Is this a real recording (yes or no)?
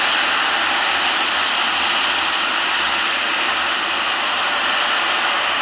yes